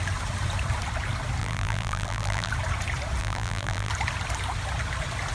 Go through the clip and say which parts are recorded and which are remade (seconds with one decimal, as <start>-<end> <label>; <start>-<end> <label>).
0.0-1.4 recorded; 1.4-2.5 remade; 2.5-3.2 recorded; 3.2-3.9 remade; 3.9-5.3 recorded